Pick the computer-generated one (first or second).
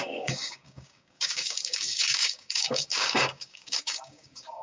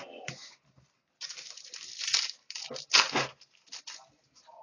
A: first